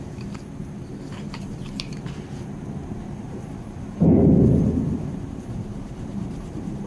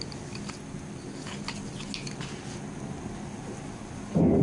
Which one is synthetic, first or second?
first